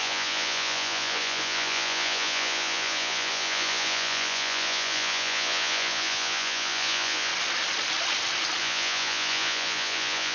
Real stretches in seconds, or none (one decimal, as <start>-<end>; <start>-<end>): 7.3-8.6